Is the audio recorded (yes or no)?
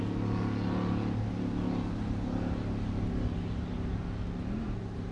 yes